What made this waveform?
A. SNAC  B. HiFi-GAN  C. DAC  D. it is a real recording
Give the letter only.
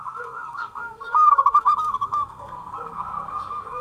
A